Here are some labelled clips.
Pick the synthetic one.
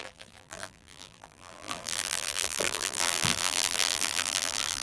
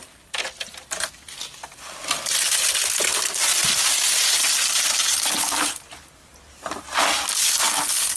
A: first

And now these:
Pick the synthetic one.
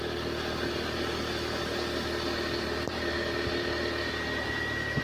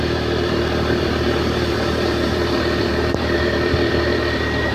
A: second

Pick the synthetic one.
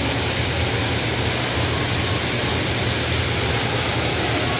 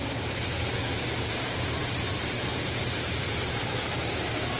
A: second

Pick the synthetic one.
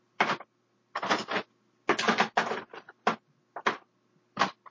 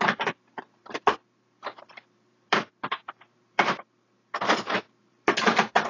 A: second